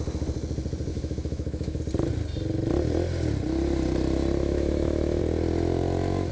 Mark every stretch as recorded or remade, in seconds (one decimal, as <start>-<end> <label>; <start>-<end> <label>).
0.0-0.9 recorded; 0.9-1.8 remade; 1.8-4.4 recorded; 4.4-5.2 remade; 5.2-6.3 recorded